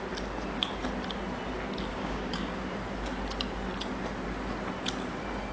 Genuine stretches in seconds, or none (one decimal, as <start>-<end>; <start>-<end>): 0.0-1.9; 2.6-5.5